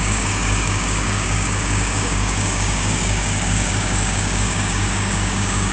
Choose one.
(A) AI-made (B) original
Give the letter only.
A